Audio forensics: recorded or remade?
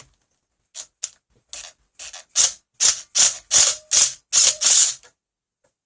recorded